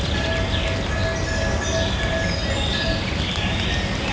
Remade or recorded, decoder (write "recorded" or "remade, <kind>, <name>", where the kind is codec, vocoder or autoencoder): recorded